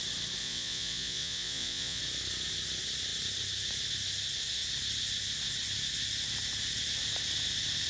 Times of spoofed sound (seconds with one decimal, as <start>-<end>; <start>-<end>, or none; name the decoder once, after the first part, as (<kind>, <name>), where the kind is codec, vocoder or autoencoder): 0.4-2.0 (vocoder, Vocos)